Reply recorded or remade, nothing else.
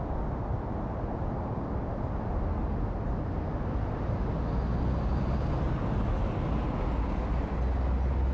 recorded